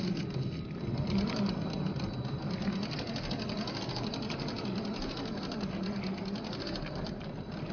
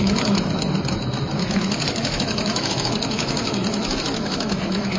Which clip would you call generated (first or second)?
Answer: second